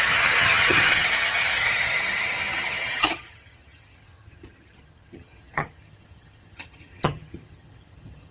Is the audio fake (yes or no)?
yes